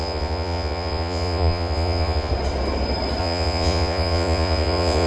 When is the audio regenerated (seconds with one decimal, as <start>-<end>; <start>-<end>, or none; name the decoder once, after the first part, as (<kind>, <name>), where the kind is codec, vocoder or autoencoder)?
0.0-2.3 (vocoder, Vocos); 3.2-5.1